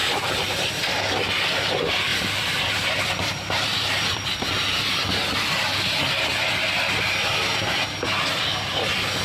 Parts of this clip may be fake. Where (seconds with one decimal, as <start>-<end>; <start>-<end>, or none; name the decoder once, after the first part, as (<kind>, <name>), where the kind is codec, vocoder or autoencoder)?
0.0-0.7 (vocoder, BigVGAN v2); 2.1-4.3